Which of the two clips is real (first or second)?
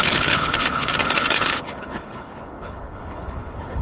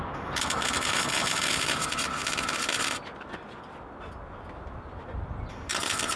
second